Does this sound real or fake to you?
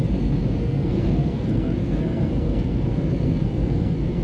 fake